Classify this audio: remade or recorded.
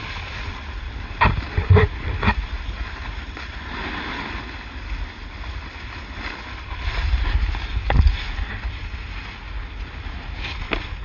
recorded